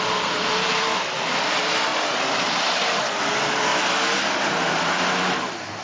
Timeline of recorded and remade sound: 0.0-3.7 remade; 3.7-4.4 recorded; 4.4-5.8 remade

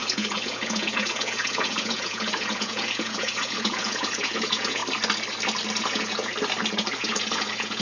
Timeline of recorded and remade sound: 0.0-4.8 remade; 4.8-5.8 recorded; 5.8-6.3 remade; 6.3-7.0 recorded; 7.0-7.8 remade

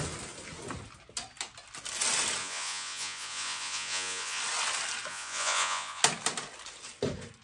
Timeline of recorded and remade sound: 0.0-2.4 recorded; 2.4-4.4 remade; 4.4-5.1 recorded; 5.1-6.0 remade; 6.0-7.4 recorded

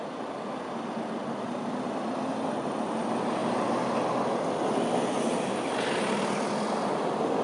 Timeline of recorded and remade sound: 0.0-7.4 recorded

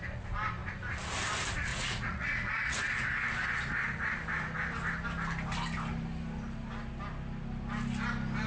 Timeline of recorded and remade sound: 0.0-1.7 recorded; 1.7-2.8 remade; 2.8-8.5 recorded

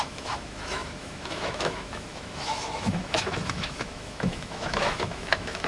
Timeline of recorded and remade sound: 0.0-5.7 remade

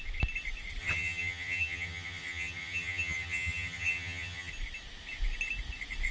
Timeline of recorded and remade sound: 0.0-0.8 recorded; 0.8-4.5 remade; 4.5-6.1 recorded

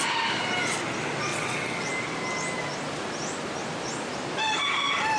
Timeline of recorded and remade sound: 0.0-1.3 recorded; 1.3-1.9 remade; 1.9-5.2 recorded